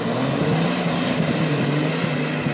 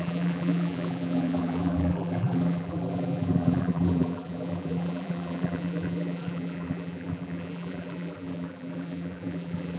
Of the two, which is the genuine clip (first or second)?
first